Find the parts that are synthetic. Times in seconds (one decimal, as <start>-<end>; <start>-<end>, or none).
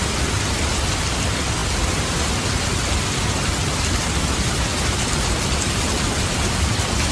none